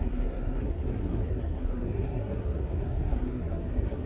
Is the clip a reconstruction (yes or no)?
yes